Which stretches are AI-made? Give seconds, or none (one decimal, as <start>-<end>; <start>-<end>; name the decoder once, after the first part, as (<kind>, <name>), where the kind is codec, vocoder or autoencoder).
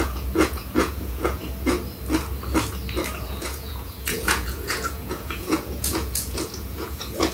0.0-1.4 (vocoder, Vocos); 3.2-7.3